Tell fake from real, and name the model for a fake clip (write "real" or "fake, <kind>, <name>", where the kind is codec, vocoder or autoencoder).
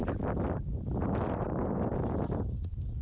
real